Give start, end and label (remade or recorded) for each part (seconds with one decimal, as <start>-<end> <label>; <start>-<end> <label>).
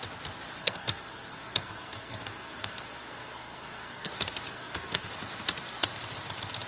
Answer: 0.0-0.6 recorded; 0.6-4.1 remade; 4.1-4.5 recorded; 4.5-5.1 remade; 5.1-6.7 recorded